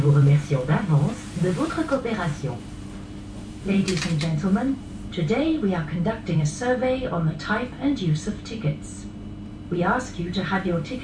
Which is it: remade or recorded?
remade